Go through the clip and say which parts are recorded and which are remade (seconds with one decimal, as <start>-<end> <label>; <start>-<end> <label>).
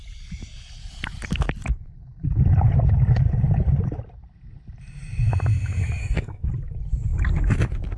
0.0-6.0 recorded; 6.0-6.5 remade; 6.5-8.0 recorded